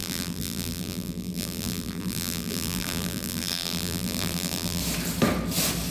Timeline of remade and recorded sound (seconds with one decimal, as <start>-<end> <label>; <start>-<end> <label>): 0.0-4.8 remade; 4.8-5.9 recorded